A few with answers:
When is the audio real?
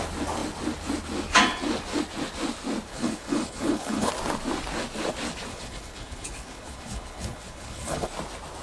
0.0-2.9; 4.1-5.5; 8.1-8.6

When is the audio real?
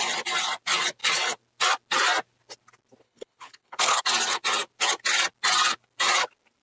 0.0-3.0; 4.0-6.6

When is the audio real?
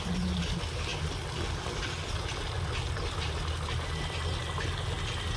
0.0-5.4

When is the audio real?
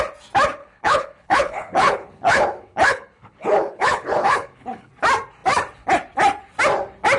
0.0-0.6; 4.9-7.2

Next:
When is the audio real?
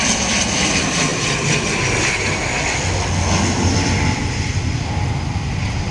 0.0-5.9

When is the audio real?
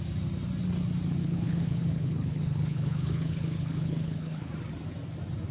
0.0-1.2; 4.5-5.5